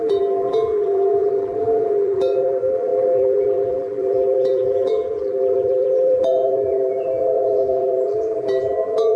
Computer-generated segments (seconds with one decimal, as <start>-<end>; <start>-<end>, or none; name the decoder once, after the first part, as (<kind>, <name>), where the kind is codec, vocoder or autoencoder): 0.0-9.2 (vocoder, BigVGAN v2)